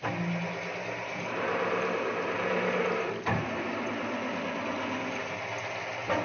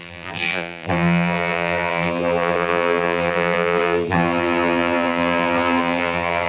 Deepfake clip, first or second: second